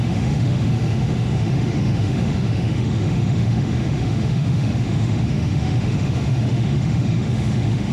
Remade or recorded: remade